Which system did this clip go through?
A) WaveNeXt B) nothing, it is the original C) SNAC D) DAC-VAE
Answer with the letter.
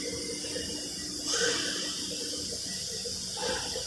B